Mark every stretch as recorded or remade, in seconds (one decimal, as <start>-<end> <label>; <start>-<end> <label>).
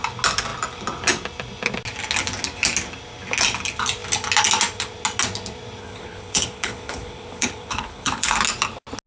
0.0-5.8 recorded; 5.8-8.4 remade; 8.4-9.1 recorded